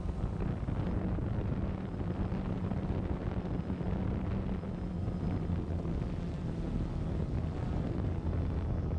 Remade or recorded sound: recorded